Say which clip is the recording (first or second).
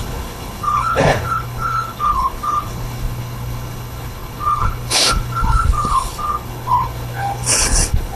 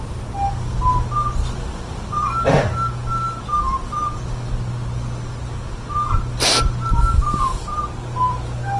second